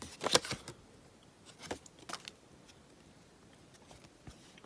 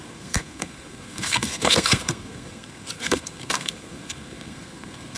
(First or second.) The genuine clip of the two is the first